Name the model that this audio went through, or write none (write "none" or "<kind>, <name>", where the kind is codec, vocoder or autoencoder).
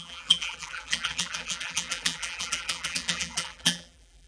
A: vocoder, BigVGAN v2